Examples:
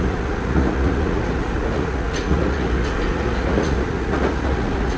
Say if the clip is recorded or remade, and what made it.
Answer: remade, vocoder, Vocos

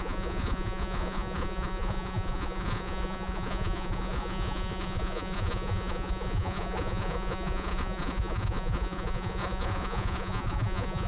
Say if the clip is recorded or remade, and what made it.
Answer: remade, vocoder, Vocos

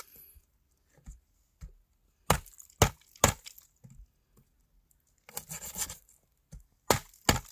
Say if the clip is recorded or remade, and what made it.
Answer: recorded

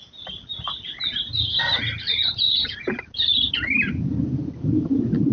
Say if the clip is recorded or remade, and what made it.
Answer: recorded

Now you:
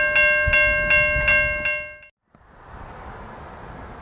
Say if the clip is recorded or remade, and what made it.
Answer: recorded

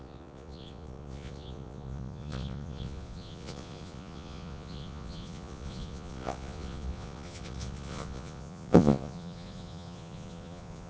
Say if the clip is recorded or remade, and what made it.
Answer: remade, vocoder, Vocos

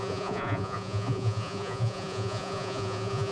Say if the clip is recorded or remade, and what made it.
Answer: remade, vocoder, Vocos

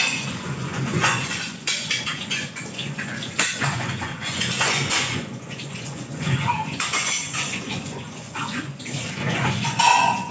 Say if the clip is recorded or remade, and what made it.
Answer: remade, vocoder, Vocos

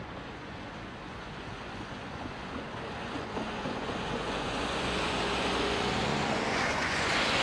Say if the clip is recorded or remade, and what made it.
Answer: remade, vocoder, Vocos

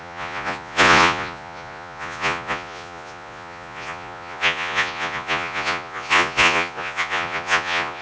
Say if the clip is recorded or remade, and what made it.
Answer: remade, vocoder, Vocos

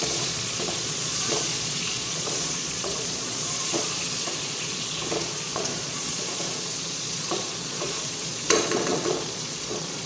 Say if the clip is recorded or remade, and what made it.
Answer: remade, vocoder, Vocos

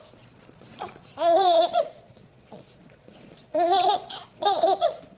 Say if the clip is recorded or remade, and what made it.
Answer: remade, vocoder, Vocos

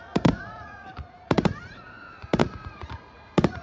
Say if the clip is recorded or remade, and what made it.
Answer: remade, vocoder, Vocos